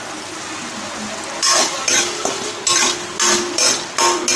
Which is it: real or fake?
real